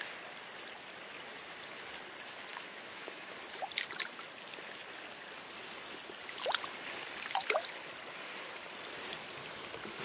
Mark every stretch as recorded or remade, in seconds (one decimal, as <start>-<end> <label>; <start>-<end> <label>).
0.0-2.5 recorded; 2.5-3.3 remade; 3.3-10.0 recorded

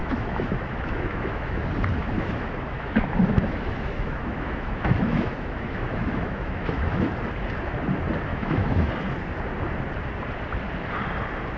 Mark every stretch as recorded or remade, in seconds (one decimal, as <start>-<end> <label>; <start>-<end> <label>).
0.0-1.6 remade; 1.6-2.0 recorded; 2.0-7.1 remade; 7.1-8.3 recorded; 8.3-8.9 remade; 8.9-11.6 recorded